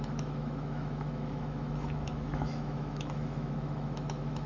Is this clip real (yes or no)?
no